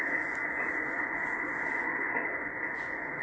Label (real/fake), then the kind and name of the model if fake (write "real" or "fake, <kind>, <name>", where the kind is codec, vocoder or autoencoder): fake, vocoder, Vocos